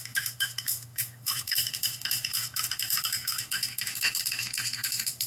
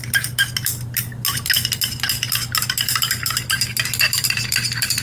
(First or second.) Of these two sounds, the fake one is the first